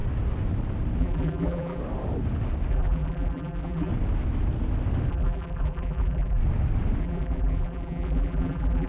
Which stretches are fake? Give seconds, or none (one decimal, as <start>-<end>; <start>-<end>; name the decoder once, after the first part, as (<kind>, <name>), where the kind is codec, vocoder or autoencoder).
1.0-1.8 (vocoder, BigVGAN v2); 2.7-3.9; 5.1-6.4; 7.0-8.9